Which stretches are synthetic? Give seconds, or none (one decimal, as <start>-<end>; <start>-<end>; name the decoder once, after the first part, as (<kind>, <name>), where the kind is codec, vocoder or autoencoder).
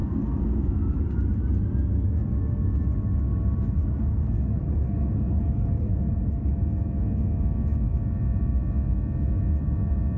0.0-0.8 (codec, SNAC); 3.8-6.5